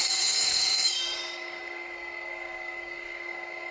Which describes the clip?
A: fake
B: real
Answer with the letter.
A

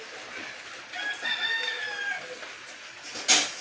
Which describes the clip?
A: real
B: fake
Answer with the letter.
A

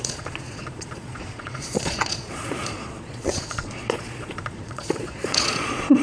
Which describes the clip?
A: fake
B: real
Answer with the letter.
A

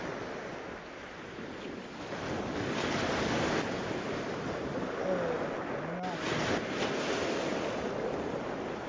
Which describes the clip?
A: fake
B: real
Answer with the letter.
B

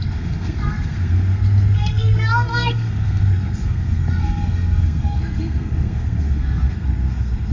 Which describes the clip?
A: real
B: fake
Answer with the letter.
B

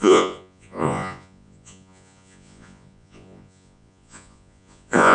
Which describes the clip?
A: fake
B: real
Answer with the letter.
A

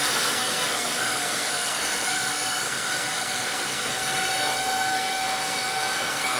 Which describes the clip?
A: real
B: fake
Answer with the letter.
B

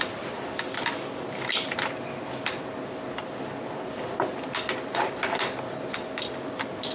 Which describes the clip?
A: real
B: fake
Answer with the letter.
A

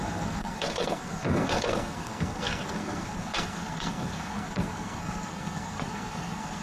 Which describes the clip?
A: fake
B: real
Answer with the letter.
A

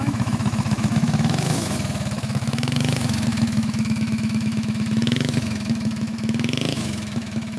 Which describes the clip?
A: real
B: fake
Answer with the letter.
B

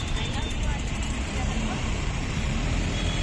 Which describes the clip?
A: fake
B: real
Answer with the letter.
A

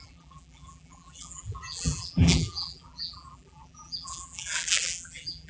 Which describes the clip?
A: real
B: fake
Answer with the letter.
B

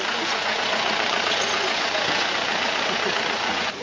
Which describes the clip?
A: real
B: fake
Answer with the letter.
B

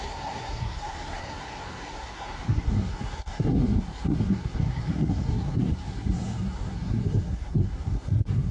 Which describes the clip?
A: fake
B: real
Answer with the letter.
A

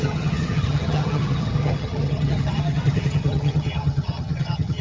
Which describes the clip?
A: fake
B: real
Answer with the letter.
A